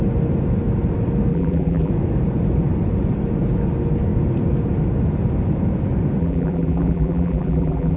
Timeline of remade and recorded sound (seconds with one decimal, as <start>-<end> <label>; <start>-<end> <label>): 0.0-1.3 recorded; 1.3-1.9 remade; 1.9-6.2 recorded; 6.2-8.0 remade